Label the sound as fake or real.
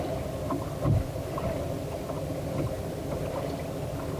real